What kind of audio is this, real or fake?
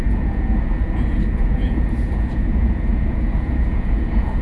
fake